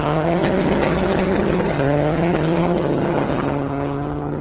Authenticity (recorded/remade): remade